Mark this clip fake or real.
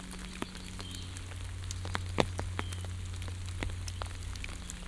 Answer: real